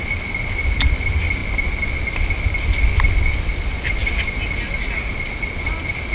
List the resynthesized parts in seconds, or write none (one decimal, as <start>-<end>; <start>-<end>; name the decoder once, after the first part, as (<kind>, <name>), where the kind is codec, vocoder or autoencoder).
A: none